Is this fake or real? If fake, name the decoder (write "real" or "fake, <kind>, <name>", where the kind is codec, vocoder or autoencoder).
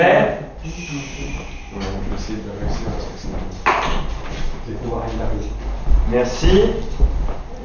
real